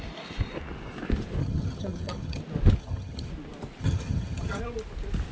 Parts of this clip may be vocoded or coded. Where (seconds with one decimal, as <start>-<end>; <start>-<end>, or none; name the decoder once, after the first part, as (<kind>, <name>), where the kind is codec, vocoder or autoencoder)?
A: 1.4-2.4 (vocoder, HiFi-GAN); 2.8-3.3; 3.8-4.6